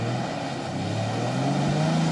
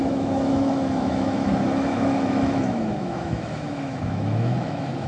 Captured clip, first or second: first